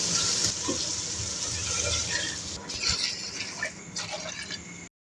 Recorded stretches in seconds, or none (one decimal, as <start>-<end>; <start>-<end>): 0.0-5.1